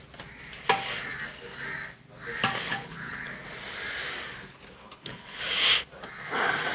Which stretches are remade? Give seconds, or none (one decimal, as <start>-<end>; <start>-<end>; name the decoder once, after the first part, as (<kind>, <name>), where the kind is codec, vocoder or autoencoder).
2.7-3.3 (codec, HILCodec); 4.8-5.4